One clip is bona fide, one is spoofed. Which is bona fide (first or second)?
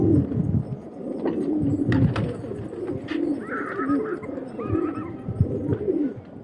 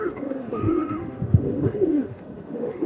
first